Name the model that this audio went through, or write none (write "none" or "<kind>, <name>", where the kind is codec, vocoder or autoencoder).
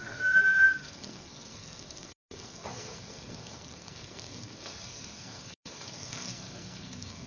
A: codec, SNAC